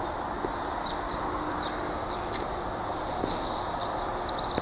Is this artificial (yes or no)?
no